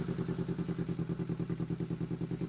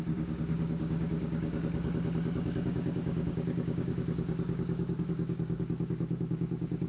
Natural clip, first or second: first